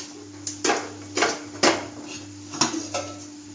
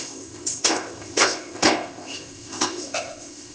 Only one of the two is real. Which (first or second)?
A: first